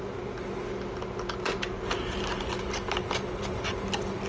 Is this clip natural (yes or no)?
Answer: yes